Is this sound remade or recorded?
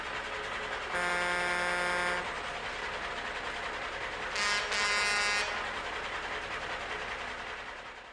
recorded